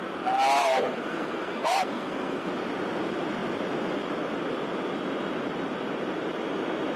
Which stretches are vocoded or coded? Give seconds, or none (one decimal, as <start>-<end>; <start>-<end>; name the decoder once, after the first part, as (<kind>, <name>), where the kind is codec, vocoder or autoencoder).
0.6-2.5 (codec, SNAC)